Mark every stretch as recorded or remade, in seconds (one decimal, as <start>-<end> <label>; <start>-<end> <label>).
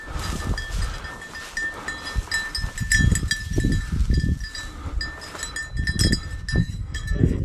0.0-6.6 recorded; 6.6-7.4 remade